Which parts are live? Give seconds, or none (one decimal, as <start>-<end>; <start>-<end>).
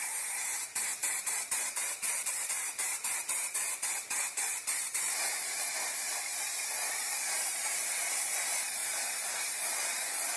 0.0-1.0; 3.6-6.3; 7.8-10.4